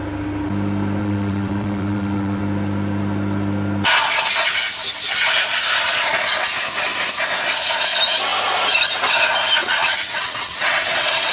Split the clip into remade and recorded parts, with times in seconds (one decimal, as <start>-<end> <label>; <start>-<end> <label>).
0.0-1.0 recorded; 1.0-2.4 remade; 2.4-9.6 recorded; 9.6-11.3 remade